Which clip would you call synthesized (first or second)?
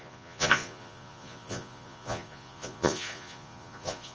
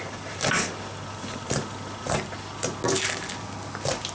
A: first